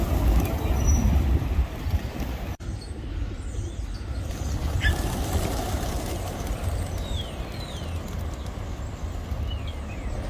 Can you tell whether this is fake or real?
real